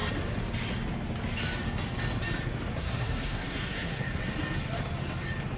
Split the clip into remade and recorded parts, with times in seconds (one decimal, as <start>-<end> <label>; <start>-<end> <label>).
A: 0.0-2.8 recorded; 2.8-4.2 remade; 4.2-5.6 recorded